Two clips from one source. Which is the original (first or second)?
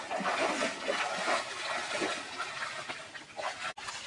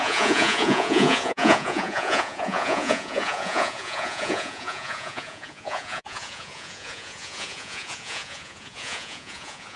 first